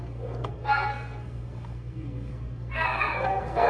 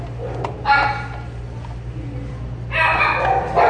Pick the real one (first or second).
second